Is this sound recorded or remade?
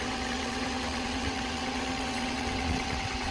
remade